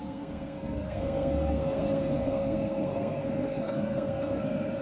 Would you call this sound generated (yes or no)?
yes